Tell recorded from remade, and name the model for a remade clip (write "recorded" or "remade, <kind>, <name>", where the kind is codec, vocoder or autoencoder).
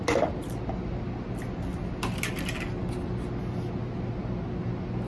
recorded